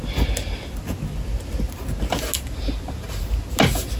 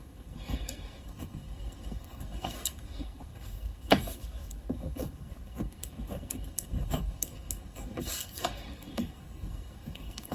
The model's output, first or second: second